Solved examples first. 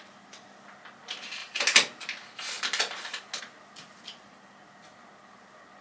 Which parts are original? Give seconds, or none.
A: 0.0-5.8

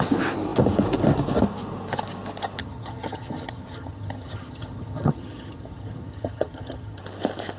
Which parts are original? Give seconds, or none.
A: 0.0-2.6; 7.0-7.6